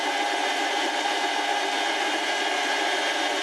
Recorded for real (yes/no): yes